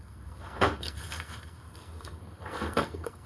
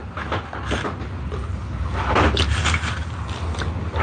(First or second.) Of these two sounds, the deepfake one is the first